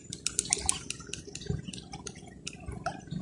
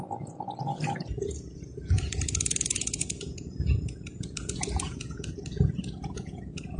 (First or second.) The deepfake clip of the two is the second